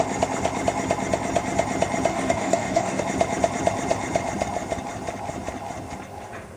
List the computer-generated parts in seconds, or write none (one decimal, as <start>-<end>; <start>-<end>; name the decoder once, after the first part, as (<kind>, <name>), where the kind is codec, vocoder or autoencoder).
2.1-3.0 (codec, DAC)